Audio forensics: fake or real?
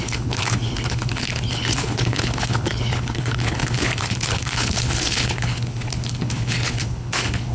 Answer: fake